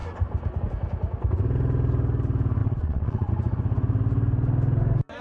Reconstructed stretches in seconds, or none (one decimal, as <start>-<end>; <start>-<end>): 2.6-3.3